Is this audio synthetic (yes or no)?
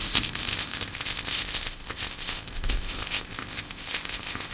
yes